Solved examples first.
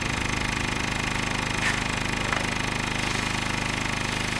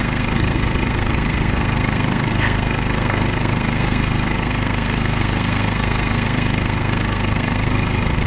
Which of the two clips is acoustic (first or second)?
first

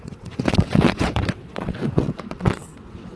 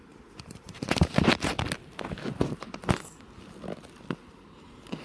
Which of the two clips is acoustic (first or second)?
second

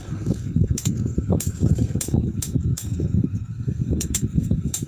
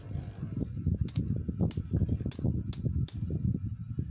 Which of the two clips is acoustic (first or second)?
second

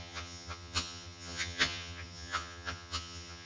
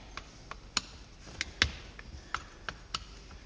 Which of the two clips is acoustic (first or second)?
second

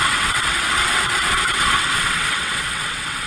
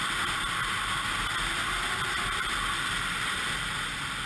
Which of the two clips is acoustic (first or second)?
second